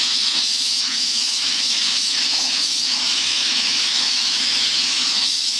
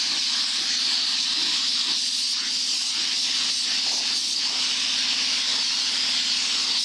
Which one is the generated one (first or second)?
first